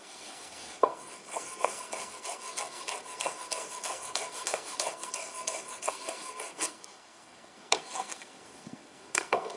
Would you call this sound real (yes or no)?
no